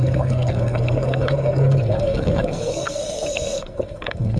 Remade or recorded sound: remade